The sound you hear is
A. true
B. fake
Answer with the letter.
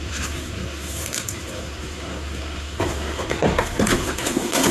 B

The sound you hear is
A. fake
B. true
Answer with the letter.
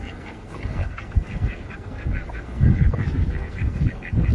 A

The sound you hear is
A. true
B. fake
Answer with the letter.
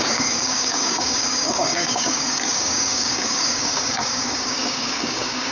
B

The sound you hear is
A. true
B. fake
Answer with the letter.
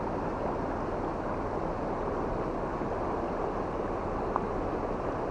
A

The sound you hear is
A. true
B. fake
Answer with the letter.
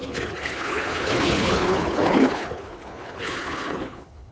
B